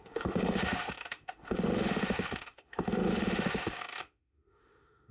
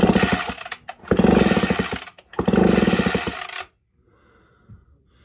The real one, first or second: second